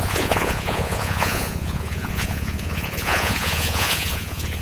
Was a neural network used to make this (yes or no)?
yes